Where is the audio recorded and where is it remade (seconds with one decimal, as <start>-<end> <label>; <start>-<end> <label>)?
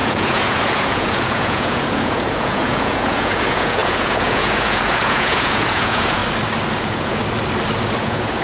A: 0.0-6.2 remade; 6.2-6.7 recorded; 6.7-7.2 remade; 7.2-8.0 recorded; 8.0-8.4 remade